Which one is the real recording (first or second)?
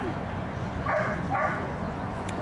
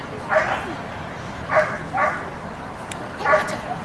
second